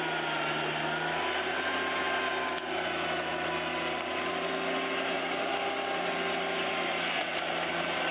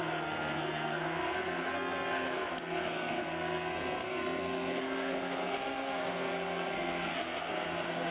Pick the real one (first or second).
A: first